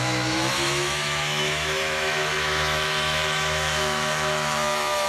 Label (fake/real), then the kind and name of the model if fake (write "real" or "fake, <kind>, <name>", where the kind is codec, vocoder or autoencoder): fake, autoencoder, DAC-VAE